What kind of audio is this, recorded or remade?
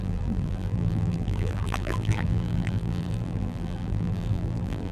remade